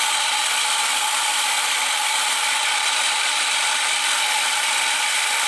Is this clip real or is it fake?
real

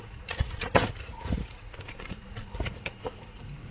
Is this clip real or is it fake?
fake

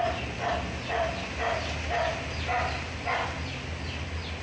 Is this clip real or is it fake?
real